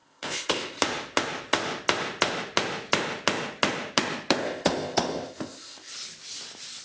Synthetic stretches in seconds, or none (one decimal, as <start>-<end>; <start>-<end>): 0.0-0.8; 4.4-5.9